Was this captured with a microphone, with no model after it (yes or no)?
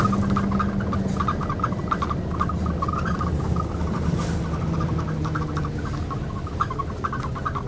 yes